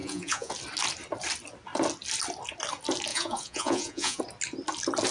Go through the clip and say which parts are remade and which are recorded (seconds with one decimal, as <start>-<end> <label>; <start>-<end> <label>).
0.0-0.5 remade; 0.5-3.1 recorded; 3.1-4.2 remade; 4.2-5.1 recorded